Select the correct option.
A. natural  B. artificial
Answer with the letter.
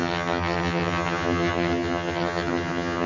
B